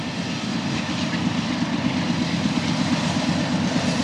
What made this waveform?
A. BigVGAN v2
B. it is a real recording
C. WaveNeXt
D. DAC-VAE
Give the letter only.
B